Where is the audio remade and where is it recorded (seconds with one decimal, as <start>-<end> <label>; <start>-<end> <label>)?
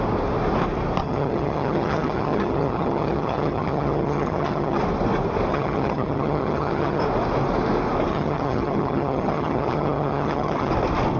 0.0-1.0 recorded; 1.0-4.8 remade; 4.8-5.5 recorded; 5.5-7.0 remade; 7.0-8.1 recorded; 8.1-10.7 remade; 10.7-11.2 recorded